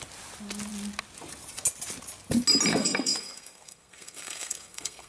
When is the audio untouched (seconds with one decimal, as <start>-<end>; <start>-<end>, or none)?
0.0-2.7